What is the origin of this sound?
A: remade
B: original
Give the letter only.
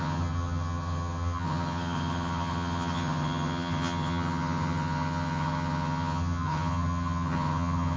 A